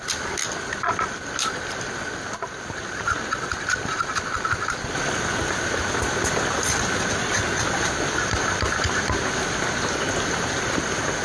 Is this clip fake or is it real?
real